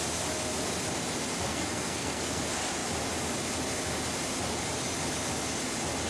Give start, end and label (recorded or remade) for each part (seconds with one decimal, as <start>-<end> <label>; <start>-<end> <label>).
0.0-1.5 recorded; 1.5-2.4 remade; 2.4-6.1 recorded